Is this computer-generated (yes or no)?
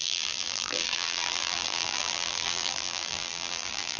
yes